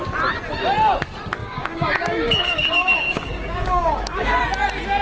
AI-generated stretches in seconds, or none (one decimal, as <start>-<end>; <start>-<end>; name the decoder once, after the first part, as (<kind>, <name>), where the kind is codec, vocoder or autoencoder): 1.4-4.4 (codec, DAC)